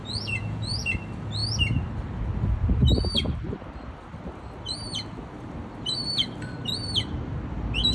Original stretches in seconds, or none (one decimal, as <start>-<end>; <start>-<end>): 0.9-7.9